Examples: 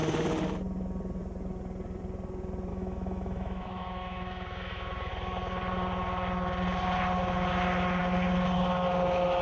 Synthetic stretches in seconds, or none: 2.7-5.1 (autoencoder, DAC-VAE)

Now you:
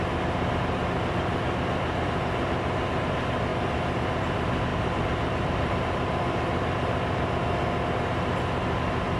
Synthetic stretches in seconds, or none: 3.5-4.1 (vocoder, BigVGAN v2); 4.7-5.8

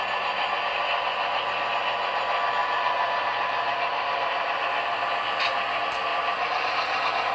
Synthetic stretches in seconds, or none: 2.6-4.6 (vocoder, BigVGAN v2); 6.1-7.3

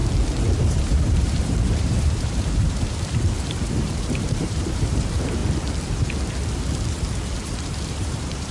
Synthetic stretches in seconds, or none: 0.6-5.4 (vocoder, BigVGAN v2); 7.6-8.5

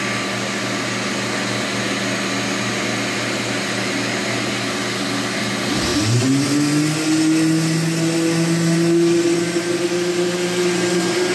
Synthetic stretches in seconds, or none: none

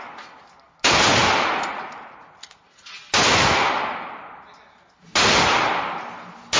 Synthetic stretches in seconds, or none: 1.7-2.9 (vocoder, Vocos)

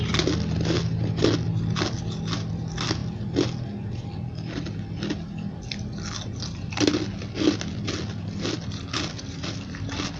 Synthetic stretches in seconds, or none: none